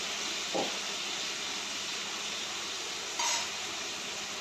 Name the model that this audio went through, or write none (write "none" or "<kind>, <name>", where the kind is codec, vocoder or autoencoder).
none